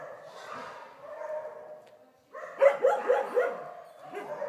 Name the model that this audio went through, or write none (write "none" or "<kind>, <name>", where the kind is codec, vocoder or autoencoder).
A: none